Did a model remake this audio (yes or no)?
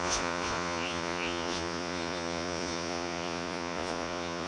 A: yes